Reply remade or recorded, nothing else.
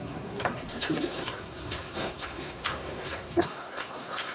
remade